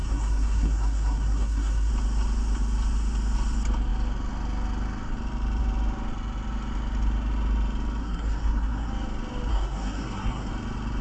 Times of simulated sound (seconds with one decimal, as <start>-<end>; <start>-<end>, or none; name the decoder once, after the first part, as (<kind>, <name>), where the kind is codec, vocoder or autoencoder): 0.0-1.9 (codec, SNAC); 8.0-8.9; 9.5-10.5